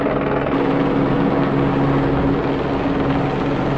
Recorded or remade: recorded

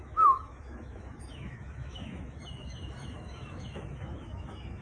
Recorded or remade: remade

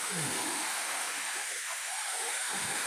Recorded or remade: remade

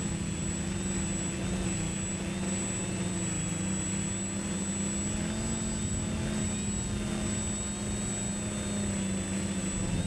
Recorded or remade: recorded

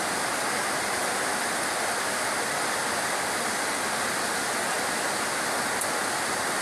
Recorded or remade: recorded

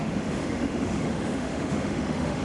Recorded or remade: remade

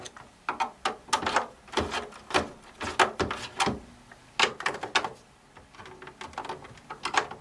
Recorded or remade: recorded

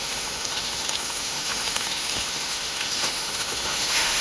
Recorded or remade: remade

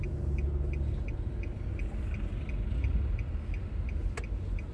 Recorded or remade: recorded